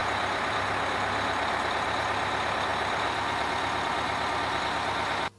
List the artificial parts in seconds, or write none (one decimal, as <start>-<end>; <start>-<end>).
0.0-1.7; 2.7-4.6